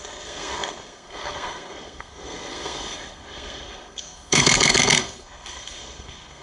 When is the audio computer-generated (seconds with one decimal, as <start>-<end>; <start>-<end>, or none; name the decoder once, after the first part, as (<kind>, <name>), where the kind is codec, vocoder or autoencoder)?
0.0-6.4 (codec, SNAC)